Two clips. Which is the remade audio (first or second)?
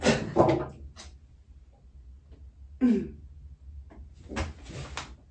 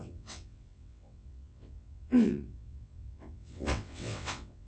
second